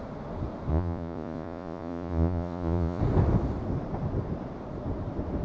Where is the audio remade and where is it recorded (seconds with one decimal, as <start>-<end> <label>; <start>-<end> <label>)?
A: 0.0-0.7 recorded; 0.7-3.0 remade; 3.0-5.4 recorded